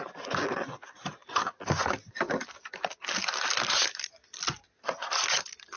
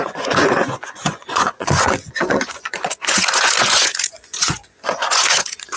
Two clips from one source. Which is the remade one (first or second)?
second